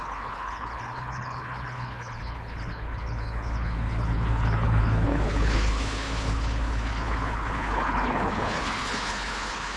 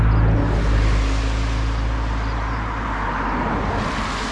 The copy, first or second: first